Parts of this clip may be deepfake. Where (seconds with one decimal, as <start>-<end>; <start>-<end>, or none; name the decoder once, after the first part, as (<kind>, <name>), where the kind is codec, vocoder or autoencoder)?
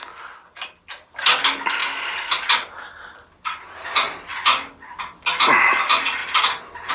1.8-3.4 (vocoder, BigVGAN v2); 6.2-6.9